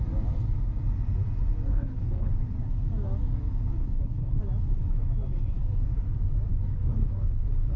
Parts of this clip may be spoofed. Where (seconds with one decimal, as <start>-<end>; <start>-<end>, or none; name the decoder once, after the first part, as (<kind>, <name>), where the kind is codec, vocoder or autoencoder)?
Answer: 1.7-2.3 (codec, HILCodec); 3.8-4.4; 6.5-7.8